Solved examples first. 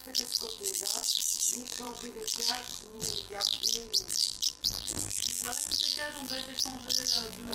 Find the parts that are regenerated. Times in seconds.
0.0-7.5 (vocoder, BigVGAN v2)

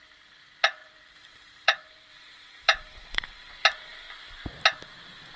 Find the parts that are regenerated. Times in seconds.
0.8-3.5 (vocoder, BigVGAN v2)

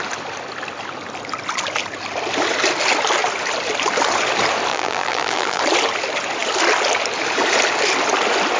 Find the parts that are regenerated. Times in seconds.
4.7-5.6 (vocoder, BigVGAN v2)

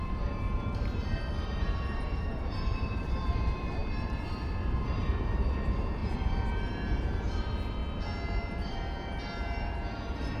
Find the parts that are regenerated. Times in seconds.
0.0-7.8 (vocoder, BigVGAN v2); 8.6-10.4

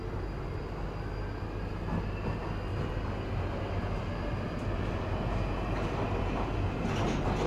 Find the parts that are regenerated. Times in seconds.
none

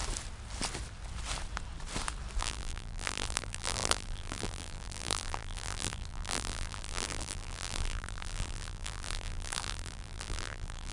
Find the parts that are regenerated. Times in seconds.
2.4-10.9 (vocoder, BigVGAN v2)